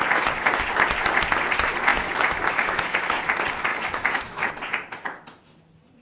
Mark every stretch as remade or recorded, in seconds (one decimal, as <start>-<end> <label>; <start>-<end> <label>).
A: 0.0-1.9 recorded; 1.9-3.2 remade; 3.2-3.7 recorded; 3.7-4.5 remade; 4.5-6.0 recorded